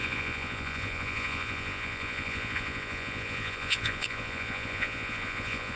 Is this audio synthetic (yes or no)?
yes